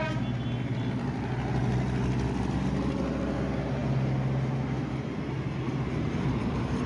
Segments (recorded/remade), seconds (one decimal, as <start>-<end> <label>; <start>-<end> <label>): 0.0-6.9 recorded

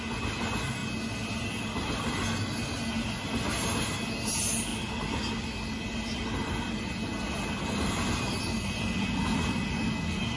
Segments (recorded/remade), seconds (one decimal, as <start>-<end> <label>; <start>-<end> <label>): 0.0-10.4 recorded

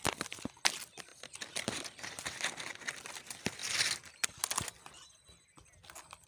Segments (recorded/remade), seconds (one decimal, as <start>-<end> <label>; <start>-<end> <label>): 0.0-6.3 recorded

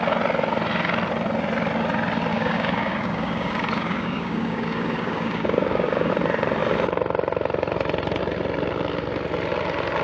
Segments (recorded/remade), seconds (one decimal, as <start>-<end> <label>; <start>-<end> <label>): 0.0-2.3 recorded; 2.3-6.1 remade; 6.1-10.0 recorded